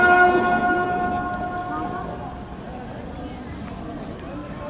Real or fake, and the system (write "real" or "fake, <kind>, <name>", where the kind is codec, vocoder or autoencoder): real